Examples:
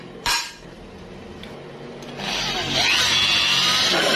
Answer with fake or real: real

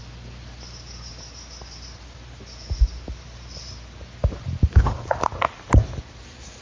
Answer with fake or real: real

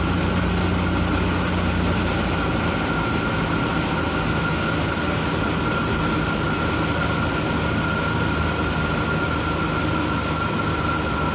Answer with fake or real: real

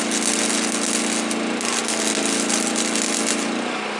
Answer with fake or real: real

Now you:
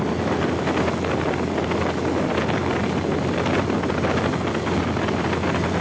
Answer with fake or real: real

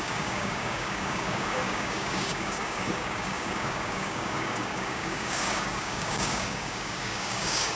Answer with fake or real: fake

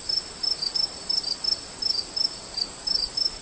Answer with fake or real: real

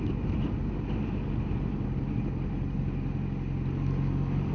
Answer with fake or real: real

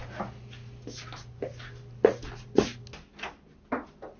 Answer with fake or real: real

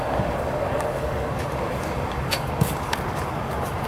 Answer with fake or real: fake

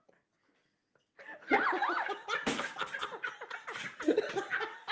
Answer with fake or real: real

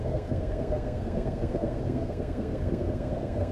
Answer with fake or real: fake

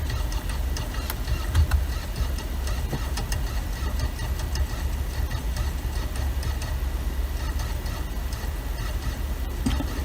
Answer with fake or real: real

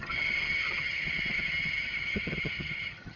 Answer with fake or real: fake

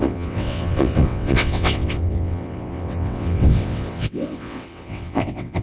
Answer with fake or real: fake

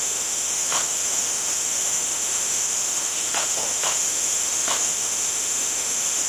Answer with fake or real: fake